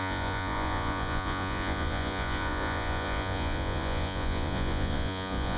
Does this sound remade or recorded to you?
remade